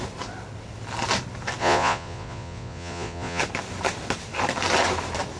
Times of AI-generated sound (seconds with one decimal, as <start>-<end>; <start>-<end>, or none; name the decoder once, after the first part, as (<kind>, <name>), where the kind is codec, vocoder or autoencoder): 1.6-3.4 (vocoder, Vocos)